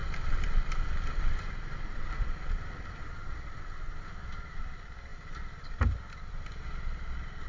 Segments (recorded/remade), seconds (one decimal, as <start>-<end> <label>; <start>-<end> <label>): 0.0-3.1 remade; 3.1-7.5 recorded